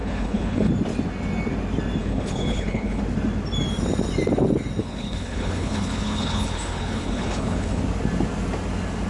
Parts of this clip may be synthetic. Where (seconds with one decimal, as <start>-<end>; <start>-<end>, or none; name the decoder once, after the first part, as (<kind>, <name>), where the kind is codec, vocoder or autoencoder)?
0.0-0.7 (codec, HILCodec); 2.0-3.0; 4.8-7.8